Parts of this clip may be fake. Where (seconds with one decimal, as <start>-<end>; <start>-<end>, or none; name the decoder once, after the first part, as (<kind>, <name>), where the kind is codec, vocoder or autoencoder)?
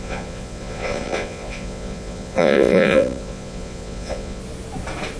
0.0-4.4 (vocoder, Vocos)